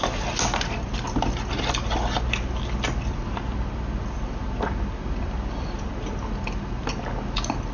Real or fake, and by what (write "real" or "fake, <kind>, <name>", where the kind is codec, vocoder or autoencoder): real